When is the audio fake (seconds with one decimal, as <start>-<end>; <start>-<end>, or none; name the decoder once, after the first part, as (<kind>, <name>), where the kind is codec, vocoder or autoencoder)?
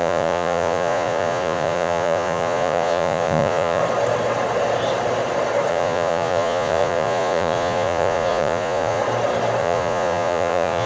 0.0-3.8 (vocoder, Vocos); 5.7-9.0; 9.6-10.9